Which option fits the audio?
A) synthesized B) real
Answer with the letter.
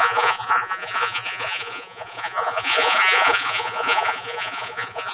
A